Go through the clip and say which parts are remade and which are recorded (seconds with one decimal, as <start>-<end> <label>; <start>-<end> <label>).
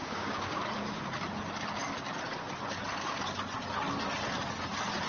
0.0-0.6 remade; 0.6-5.1 recorded